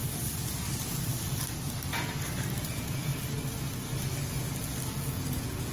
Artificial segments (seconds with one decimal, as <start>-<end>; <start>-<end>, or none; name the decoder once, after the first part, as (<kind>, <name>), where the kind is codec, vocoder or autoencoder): 2.6-3.1 (vocoder, Vocos); 4.9-5.7